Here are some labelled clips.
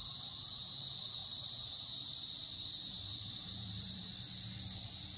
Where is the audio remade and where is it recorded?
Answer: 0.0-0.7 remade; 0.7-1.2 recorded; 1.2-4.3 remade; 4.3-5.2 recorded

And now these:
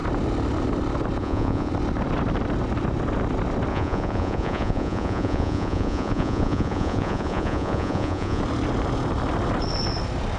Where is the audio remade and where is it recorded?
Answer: 0.0-1.2 recorded; 1.2-1.7 remade; 1.7-3.7 recorded; 3.7-8.4 remade; 8.4-10.4 recorded

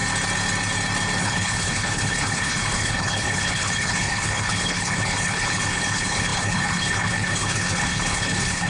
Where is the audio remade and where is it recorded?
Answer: 0.0-1.2 recorded; 1.2-8.7 remade

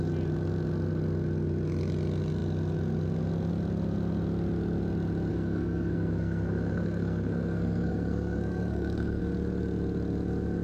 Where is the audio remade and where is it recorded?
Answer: 0.0-5.3 recorded; 5.3-9.2 remade; 9.2-10.6 recorded

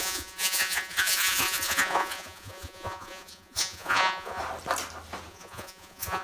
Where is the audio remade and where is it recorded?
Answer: 0.0-4.4 remade; 4.4-5.3 recorded; 5.3-6.2 remade

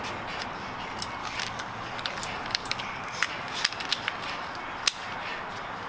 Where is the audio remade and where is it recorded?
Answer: 0.0-1.2 recorded; 1.2-2.0 remade; 2.0-2.6 recorded; 2.6-3.3 remade; 3.3-5.9 recorded